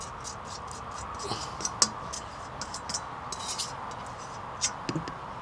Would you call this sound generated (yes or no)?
no